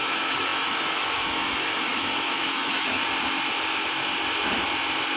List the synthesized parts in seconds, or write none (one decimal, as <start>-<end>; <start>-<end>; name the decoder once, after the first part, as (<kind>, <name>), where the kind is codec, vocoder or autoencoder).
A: 0.0-3.0 (autoencoder, DAC-VAE)